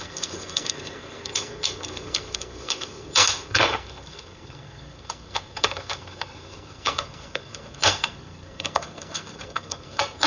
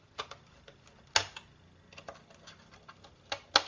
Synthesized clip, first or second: first